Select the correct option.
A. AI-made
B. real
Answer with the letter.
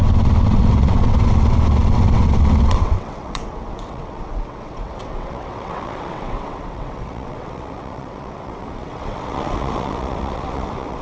A